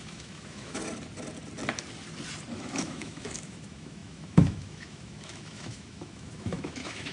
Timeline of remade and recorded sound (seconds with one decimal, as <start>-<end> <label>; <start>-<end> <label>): 0.0-0.8 remade; 0.8-2.6 recorded; 2.6-7.1 remade